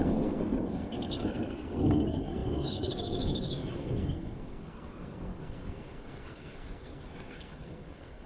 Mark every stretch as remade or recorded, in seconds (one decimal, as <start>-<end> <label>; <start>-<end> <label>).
0.0-8.3 remade